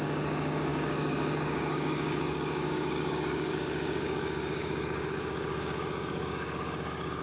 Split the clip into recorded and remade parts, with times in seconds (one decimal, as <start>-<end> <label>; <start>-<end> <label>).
0.0-7.2 remade